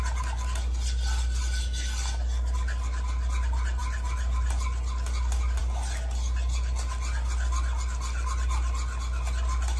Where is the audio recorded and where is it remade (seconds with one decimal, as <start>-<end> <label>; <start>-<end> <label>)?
0.0-9.8 recorded